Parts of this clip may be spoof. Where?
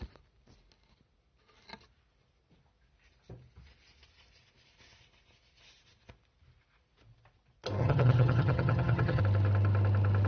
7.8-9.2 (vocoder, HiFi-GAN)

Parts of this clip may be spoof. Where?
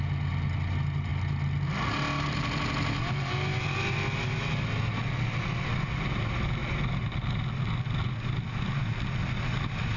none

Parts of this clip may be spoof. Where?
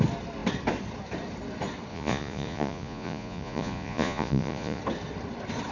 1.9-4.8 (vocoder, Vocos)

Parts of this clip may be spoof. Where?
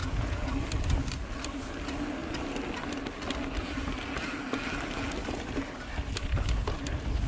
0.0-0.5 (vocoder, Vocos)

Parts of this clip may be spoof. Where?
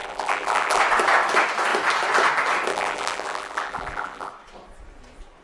0.0-0.8 (vocoder, BigVGAN v2); 2.7-4.3